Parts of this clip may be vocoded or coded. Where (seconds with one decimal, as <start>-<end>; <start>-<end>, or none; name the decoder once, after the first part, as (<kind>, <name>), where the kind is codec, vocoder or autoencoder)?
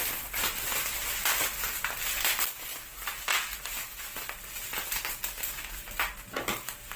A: none